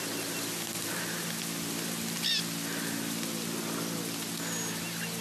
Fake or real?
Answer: real